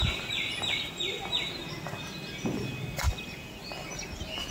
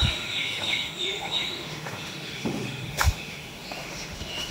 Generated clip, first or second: second